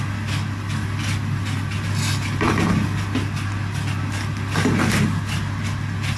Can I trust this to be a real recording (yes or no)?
yes